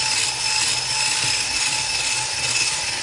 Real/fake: real